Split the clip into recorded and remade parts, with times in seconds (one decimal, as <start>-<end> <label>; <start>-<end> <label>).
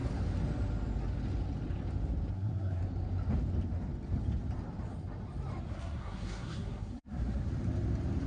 0.0-2.3 recorded; 2.3-2.8 remade; 2.8-5.7 recorded; 5.7-7.5 remade; 7.5-8.3 recorded